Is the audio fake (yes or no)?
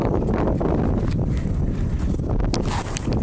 yes